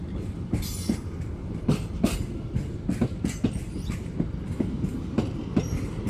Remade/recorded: remade